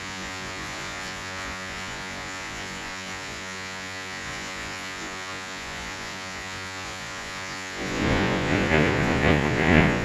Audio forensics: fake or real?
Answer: fake